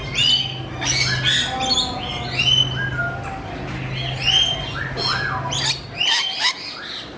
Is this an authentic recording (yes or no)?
yes